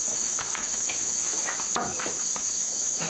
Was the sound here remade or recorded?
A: remade